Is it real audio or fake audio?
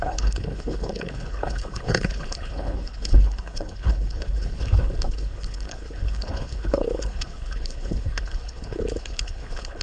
fake